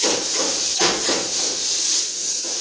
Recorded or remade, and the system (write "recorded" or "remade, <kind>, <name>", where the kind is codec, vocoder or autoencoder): recorded